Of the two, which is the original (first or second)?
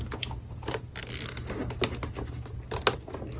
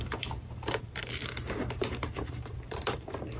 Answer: first